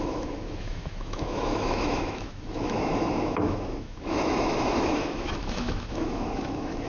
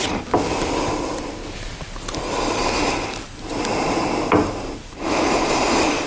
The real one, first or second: second